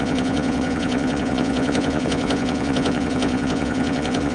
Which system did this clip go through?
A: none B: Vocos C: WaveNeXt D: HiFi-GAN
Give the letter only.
B